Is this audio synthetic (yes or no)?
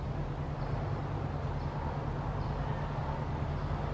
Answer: no